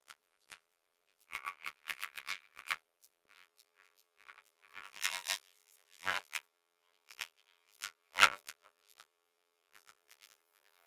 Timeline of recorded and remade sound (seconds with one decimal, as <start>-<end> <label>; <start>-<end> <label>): 0.0-10.9 remade